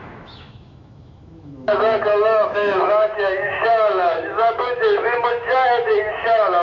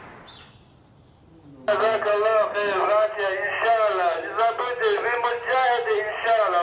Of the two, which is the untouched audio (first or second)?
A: second